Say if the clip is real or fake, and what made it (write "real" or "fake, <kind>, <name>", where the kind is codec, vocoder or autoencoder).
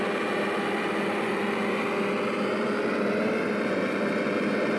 real